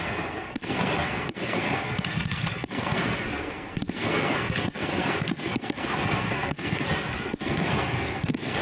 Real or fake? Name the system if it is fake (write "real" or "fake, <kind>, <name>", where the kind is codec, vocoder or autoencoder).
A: fake, codec, SNAC